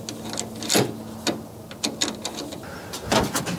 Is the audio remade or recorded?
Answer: recorded